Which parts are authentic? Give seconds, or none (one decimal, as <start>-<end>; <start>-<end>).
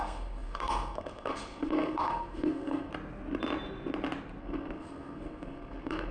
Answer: 2.9-4.4